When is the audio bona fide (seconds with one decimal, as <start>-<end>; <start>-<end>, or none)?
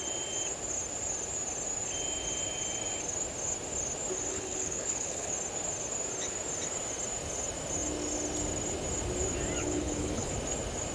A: 0.0-4.3; 5.3-9.6; 10.3-10.9